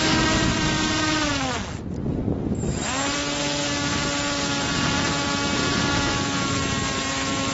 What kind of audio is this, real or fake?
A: real